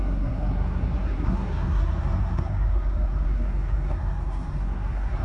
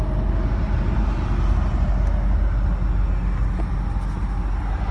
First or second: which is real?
second